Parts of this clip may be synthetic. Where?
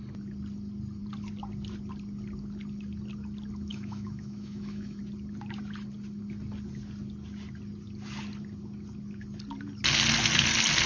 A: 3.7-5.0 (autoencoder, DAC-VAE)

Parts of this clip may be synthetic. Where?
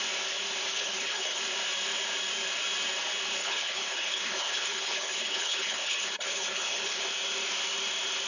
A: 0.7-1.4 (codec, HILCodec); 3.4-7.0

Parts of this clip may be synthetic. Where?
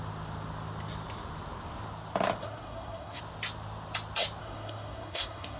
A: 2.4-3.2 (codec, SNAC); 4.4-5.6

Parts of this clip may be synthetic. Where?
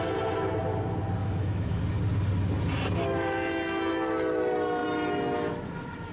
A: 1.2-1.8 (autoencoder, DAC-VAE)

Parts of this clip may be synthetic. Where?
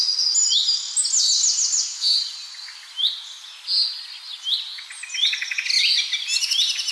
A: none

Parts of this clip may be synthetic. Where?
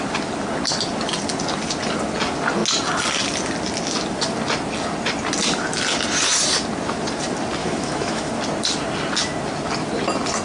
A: 7.6-8.3 (autoencoder, DAC-VAE)